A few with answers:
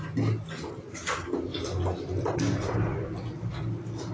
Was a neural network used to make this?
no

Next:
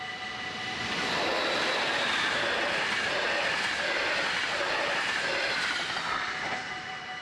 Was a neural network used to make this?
yes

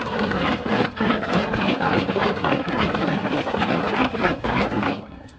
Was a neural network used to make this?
yes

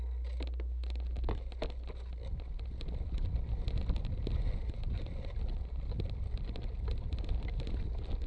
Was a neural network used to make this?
no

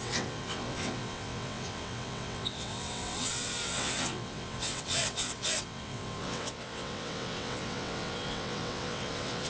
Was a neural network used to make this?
yes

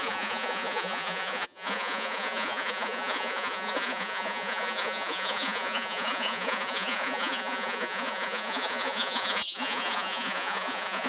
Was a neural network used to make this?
yes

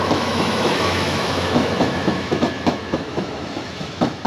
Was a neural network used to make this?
yes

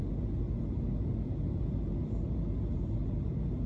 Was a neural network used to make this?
no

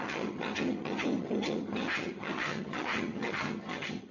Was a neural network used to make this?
yes